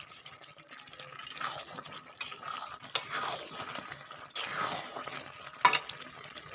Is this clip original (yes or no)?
yes